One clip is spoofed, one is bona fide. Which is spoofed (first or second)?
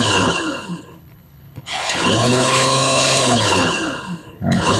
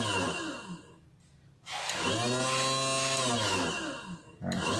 first